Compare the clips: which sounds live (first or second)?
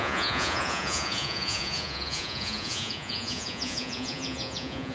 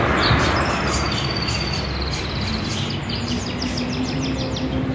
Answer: second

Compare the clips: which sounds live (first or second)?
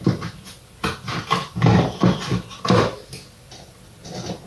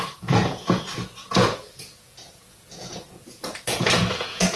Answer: first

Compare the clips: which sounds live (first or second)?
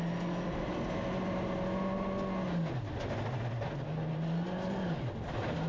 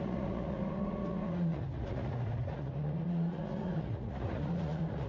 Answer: first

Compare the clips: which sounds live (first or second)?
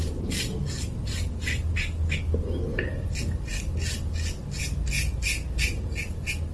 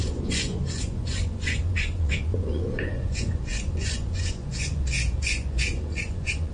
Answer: first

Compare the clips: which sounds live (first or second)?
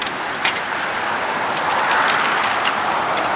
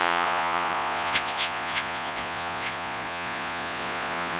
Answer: first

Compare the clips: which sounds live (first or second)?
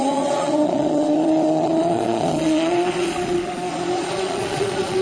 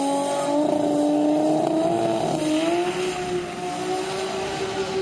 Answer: second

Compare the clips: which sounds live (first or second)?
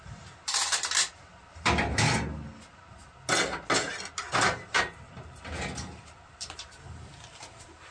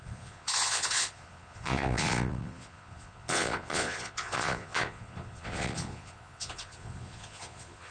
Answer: first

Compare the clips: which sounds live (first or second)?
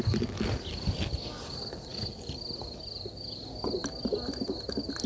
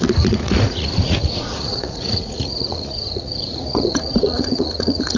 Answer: first